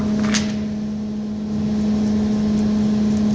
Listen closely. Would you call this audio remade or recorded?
recorded